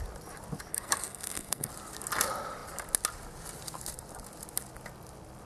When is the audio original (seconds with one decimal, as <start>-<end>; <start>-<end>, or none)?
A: 0.0-0.7; 1.7-5.5

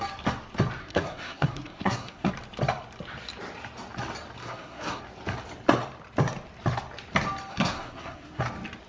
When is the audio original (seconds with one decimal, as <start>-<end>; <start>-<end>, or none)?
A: 0.0-0.8; 2.3-4.4; 5.0-7.5; 8.4-8.9

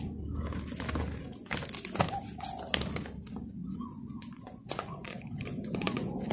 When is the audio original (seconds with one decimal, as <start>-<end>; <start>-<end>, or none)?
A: 0.0-3.6